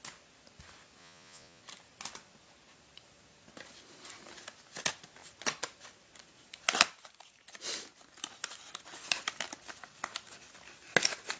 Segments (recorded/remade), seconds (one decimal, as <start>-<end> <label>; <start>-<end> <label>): 0.0-1.0 recorded; 1.0-1.6 remade; 1.6-11.4 recorded